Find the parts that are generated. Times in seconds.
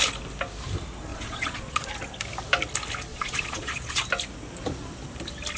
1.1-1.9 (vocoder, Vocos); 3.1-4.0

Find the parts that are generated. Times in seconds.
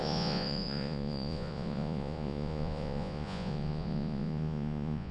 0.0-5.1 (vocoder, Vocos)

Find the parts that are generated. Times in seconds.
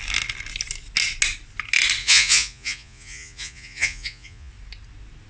2.0-4.5 (vocoder, Vocos)